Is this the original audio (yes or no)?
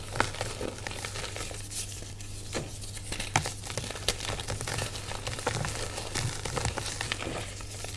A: yes